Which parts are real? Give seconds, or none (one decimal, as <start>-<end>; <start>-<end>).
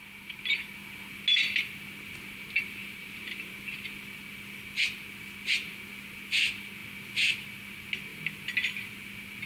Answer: 0.0-2.8; 3.5-9.5